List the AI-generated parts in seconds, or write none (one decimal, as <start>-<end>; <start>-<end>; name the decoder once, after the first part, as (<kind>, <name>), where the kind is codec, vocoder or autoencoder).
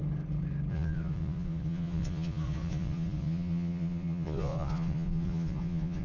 0.7-6.0 (vocoder, Vocos)